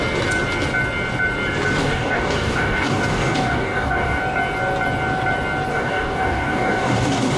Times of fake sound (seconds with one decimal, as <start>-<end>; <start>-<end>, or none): 1.8-4.2; 5.7-7.4